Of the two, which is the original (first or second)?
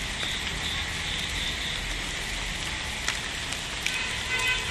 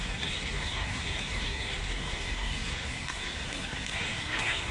first